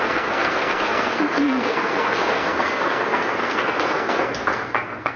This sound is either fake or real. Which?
fake